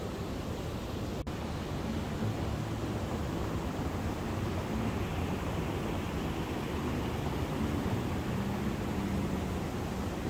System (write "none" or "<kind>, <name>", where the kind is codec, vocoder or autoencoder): none